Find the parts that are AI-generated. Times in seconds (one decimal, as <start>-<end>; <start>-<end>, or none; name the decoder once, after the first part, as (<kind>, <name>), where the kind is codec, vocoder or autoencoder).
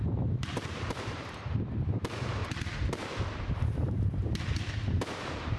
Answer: 0.0-2.4 (vocoder, BigVGAN v2); 3.5-5.6